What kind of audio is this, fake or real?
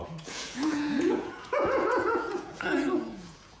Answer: fake